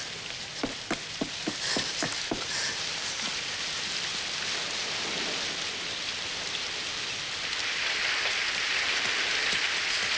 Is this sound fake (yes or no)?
no